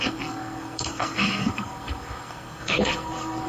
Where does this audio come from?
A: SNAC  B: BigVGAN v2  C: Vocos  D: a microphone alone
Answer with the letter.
A